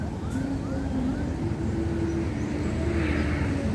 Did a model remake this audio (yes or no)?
no